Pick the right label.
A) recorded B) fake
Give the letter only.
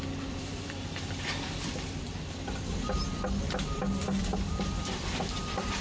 B